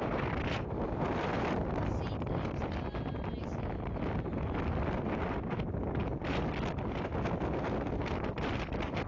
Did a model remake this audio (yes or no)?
no